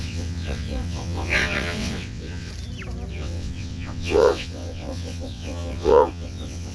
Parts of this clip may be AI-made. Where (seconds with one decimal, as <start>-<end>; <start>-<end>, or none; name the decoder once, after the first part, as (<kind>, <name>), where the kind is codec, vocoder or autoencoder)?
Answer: 0.0-2.5 (vocoder, WaveNeXt); 3.1-6.7